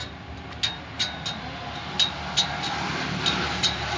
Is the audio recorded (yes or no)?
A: yes